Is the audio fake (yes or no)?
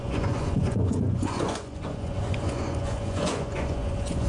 yes